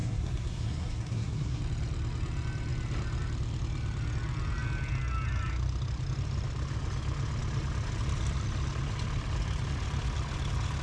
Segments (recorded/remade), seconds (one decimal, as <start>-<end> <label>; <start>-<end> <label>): 0.0-1.6 remade; 1.6-10.8 recorded